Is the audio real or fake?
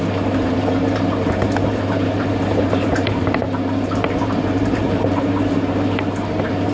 fake